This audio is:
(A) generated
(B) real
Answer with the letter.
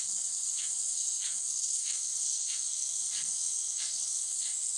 A